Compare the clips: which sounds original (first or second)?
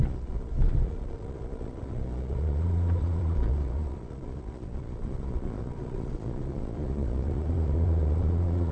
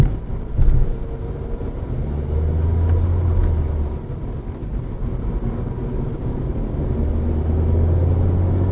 second